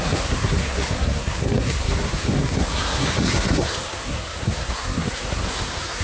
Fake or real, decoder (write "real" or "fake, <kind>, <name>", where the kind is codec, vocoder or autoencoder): fake, codec, SNAC